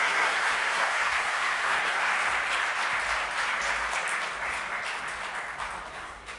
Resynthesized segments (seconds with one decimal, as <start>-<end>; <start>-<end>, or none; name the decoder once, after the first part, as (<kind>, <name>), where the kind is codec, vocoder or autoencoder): 0.0-2.1 (codec, SNAC); 5.9-6.4